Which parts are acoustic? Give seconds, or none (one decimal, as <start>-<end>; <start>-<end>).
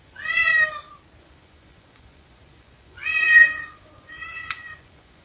0.5-1.2